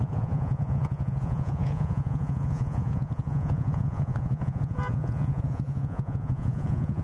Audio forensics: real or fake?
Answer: fake